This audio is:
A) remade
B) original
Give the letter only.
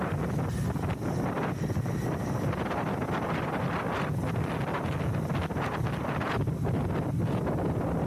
B